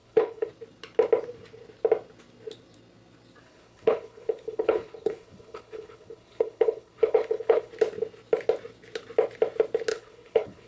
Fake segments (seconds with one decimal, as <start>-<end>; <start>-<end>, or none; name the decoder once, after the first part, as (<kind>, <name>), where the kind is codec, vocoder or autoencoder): 0.0-0.5 (codec, HILCodec); 3.4-7.7; 9.9-10.7